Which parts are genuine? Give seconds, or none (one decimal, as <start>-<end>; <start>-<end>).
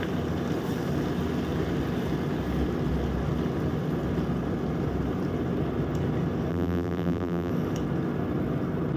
0.0-6.5; 7.5-9.0